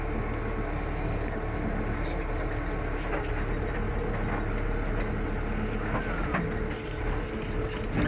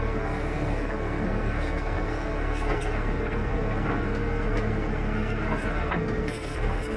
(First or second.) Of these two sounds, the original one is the first